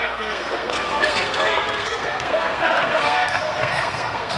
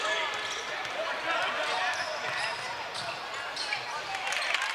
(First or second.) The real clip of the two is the second